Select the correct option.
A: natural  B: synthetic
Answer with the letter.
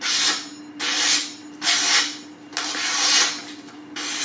A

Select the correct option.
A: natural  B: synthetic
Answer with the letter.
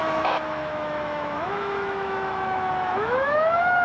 B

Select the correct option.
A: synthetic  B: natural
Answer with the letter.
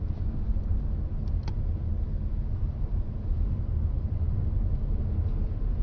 B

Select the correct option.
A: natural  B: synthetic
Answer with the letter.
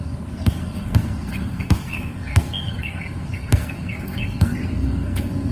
B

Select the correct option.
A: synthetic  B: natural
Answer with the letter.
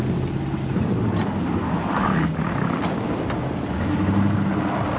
B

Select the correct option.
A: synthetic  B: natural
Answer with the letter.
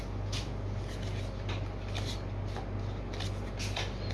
B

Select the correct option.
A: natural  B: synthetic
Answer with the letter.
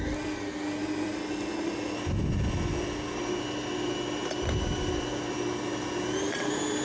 A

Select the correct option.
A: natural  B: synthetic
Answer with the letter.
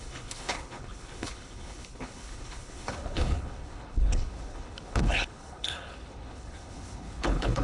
B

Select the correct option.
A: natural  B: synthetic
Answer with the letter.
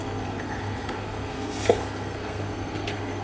B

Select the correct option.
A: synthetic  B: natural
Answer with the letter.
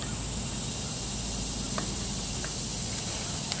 B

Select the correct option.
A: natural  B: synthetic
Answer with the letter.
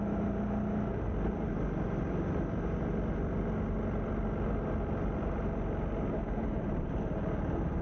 A